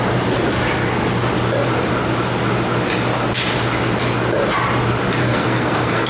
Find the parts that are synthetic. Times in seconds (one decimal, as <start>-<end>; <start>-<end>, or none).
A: 5.2-6.1